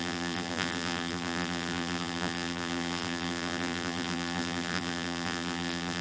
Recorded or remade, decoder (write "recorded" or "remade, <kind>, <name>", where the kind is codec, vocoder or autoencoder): remade, vocoder, BigVGAN v2